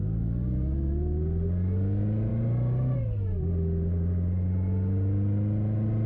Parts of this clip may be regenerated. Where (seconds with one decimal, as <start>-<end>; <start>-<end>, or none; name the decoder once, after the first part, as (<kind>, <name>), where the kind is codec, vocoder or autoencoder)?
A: none